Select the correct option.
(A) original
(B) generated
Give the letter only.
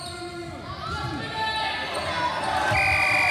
A